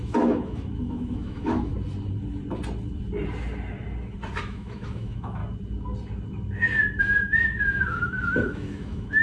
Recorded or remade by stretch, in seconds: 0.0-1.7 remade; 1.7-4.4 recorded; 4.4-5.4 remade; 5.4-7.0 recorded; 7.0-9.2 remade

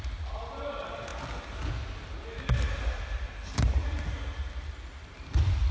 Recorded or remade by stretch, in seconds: 0.0-5.7 recorded